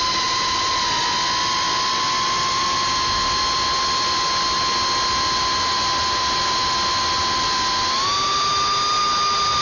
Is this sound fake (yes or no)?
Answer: no